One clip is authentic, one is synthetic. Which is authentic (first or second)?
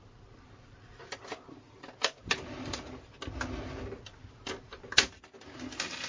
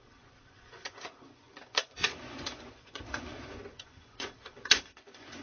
first